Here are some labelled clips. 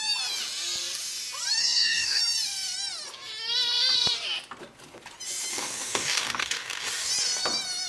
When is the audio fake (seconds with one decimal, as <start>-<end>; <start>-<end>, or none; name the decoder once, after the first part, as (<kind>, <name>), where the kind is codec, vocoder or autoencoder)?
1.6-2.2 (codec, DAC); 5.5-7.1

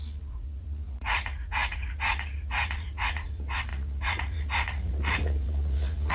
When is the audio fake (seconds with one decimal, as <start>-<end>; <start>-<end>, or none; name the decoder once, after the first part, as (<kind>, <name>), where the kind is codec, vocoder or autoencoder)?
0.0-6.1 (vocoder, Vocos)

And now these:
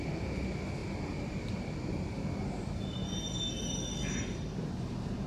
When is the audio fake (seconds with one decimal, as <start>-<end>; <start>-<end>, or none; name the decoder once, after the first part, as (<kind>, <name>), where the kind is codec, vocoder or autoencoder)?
none